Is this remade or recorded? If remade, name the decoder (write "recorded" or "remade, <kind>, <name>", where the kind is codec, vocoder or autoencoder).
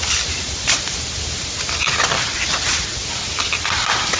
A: recorded